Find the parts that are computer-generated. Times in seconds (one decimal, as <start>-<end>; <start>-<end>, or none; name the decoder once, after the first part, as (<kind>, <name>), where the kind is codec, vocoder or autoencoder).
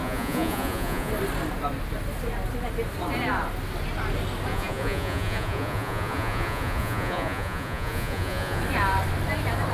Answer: 0.0-1.1 (vocoder, Vocos); 4.5-8.6